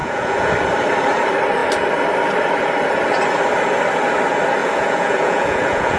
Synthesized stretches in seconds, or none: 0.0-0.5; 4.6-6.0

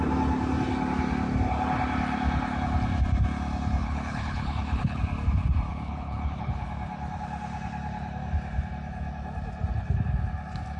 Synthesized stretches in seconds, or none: 3.8-5.0; 5.7-6.7

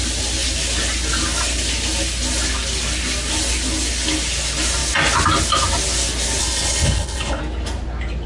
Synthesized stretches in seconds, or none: 6.4-7.4

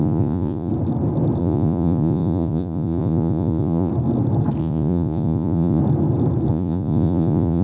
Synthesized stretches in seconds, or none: 0.0-0.7; 1.4-3.9; 4.6-5.8; 6.5-7.6

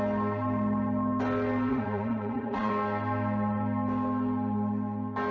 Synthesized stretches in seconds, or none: 1.7-2.7

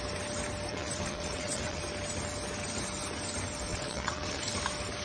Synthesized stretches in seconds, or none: 0.7-1.8; 3.7-4.4

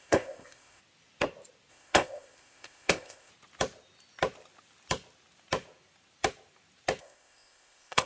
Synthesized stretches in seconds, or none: 0.0-0.8; 1.7-3.3; 7.0-8.1